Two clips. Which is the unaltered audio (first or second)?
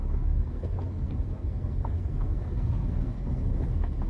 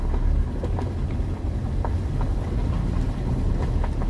second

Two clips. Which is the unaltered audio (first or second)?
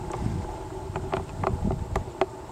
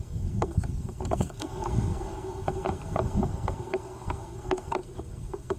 first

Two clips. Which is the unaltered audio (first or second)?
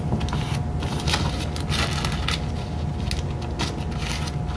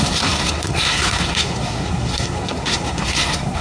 first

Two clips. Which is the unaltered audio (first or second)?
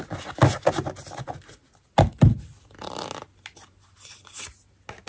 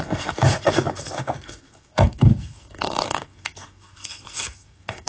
first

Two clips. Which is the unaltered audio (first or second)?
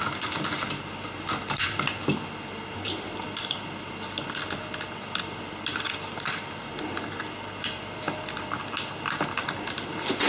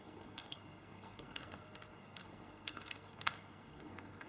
first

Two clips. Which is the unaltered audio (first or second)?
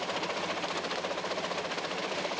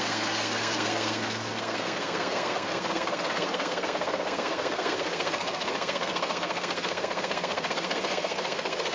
first